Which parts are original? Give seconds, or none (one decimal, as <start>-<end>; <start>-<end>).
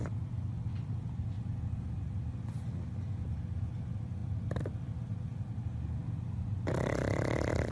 0.0-4.2; 5.1-7.7